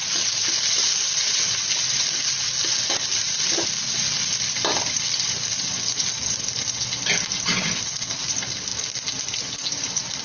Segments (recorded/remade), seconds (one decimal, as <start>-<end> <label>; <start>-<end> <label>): 0.0-4.2 remade; 4.2-8.7 recorded; 8.7-10.2 remade